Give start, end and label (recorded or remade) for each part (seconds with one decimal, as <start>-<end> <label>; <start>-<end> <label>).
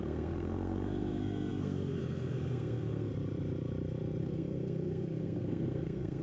0.0-3.1 remade; 3.1-4.2 recorded; 4.2-6.2 remade